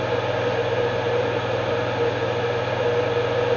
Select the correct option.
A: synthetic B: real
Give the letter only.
B